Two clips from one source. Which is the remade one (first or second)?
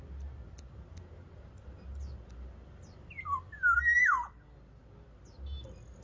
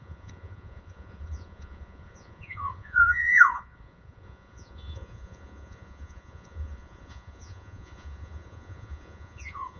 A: second